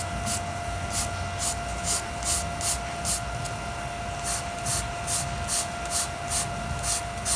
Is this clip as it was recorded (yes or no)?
yes